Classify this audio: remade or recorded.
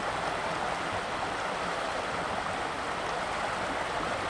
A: recorded